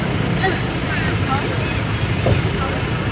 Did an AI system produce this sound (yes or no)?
no